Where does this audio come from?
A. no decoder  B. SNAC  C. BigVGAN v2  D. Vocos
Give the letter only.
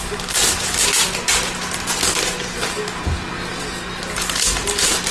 A